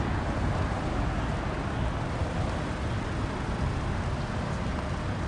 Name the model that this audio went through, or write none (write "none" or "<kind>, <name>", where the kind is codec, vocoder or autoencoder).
none